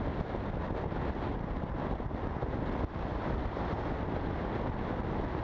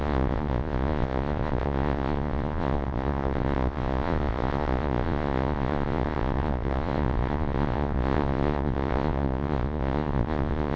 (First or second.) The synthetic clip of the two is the second